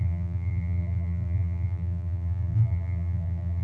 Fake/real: fake